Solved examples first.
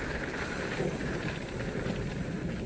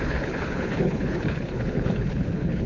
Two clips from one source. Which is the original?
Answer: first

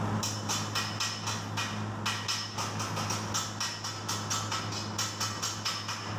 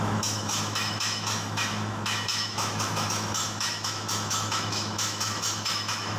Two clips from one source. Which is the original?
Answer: first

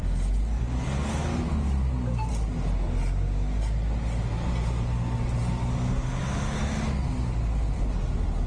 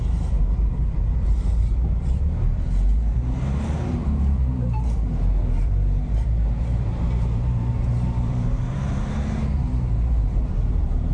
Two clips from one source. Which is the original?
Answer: first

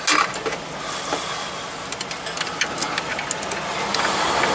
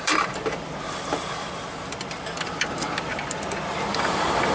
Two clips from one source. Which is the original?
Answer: first